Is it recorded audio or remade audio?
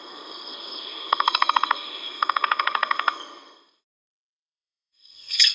remade